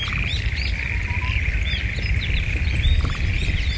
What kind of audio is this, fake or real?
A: real